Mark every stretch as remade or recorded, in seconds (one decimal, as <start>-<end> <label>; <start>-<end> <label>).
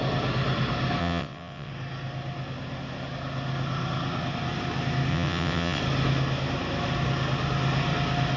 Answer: 0.0-1.0 recorded; 1.0-1.7 remade; 1.7-5.1 recorded; 5.1-5.8 remade; 5.8-8.4 recorded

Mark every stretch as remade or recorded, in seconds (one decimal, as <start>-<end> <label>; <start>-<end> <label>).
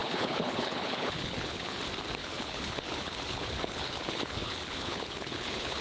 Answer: 0.0-1.8 remade; 1.8-2.2 recorded; 2.2-5.8 remade